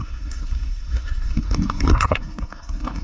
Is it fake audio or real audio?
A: fake